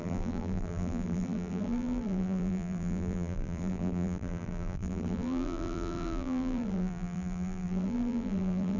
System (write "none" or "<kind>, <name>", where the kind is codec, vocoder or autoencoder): vocoder, BigVGAN v2